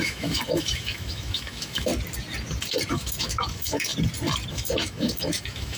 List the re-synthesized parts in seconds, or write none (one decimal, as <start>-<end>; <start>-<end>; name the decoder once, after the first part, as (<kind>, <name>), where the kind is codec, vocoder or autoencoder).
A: 0.0-1.9 (autoencoder, DAC-VAE); 2.9-3.9; 4.5-5.8